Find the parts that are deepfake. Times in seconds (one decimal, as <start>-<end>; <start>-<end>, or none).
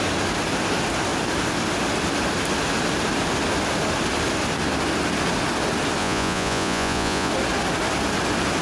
6.0-7.3